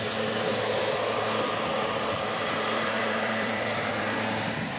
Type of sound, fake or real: fake